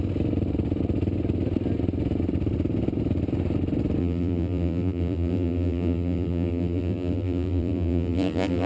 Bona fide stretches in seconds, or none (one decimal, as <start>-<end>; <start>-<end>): 0.0-4.0